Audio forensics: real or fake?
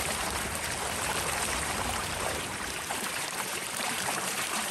fake